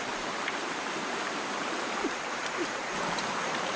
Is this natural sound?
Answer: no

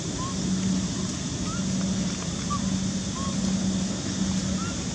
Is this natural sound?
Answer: yes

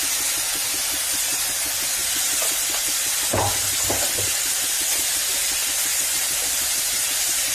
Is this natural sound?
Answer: yes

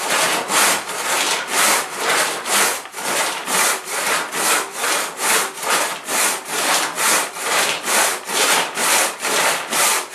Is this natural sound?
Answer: no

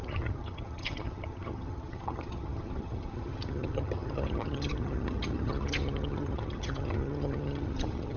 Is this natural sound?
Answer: no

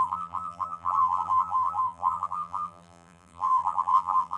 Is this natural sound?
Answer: no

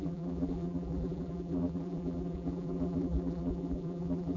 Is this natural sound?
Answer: no